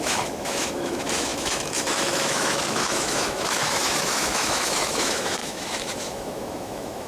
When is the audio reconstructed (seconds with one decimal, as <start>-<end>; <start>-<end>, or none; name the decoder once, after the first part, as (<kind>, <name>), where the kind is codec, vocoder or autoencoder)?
0.0-7.1 (autoencoder, DAC-VAE)